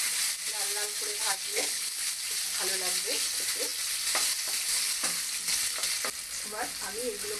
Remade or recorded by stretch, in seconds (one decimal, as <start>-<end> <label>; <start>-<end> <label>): 0.0-1.5 recorded; 1.5-2.1 remade; 2.1-7.4 recorded